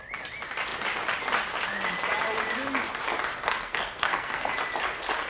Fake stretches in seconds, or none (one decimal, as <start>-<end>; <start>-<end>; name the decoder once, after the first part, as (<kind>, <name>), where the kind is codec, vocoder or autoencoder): 3.4-4.5 (codec, SNAC)